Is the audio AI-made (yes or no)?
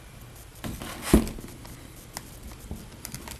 no